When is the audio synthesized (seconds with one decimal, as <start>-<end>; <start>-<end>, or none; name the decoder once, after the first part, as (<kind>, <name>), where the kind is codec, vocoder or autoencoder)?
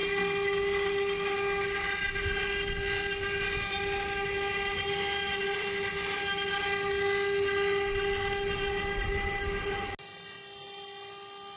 none